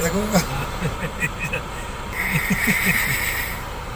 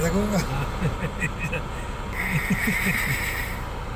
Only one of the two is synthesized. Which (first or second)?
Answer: first